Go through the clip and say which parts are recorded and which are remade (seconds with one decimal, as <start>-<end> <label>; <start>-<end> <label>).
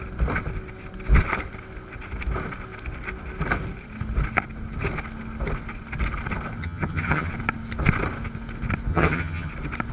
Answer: 0.0-6.6 recorded; 6.6-7.3 remade; 7.3-8.9 recorded; 8.9-9.5 remade; 9.5-9.9 recorded